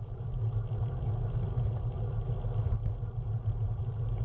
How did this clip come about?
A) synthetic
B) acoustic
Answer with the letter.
B